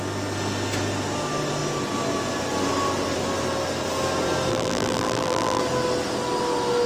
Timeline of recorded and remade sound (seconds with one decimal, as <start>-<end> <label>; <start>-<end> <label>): 0.0-4.5 recorded; 4.5-5.6 remade; 5.6-6.9 recorded